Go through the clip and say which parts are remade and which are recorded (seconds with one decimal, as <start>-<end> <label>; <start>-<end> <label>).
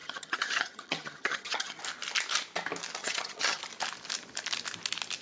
0.0-1.8 remade; 1.8-3.0 recorded; 3.0-3.6 remade; 3.6-5.2 recorded